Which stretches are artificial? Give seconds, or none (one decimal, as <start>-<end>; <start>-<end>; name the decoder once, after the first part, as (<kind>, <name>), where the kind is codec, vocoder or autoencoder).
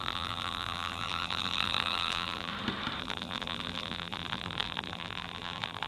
0.0-2.5 (vocoder, BigVGAN v2); 3.0-5.9